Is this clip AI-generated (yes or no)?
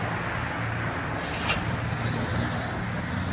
no